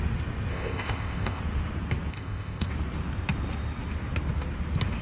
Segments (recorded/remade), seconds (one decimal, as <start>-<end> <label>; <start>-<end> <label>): 0.0-0.5 recorded; 0.5-1.4 remade; 1.4-2.1 recorded; 2.1-2.7 remade; 2.7-5.0 recorded